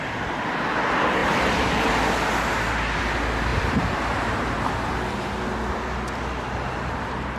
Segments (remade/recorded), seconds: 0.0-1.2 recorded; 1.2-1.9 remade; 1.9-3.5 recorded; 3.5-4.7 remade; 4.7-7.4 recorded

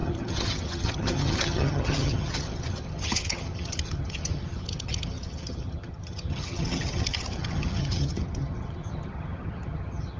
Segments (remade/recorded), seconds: 0.0-10.2 remade

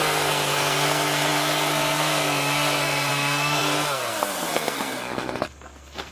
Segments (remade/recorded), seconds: 0.0-6.1 remade